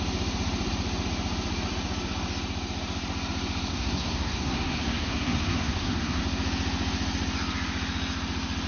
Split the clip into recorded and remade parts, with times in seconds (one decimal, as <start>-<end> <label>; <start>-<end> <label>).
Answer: 0.0-3.7 recorded; 3.7-6.2 remade; 6.2-8.7 recorded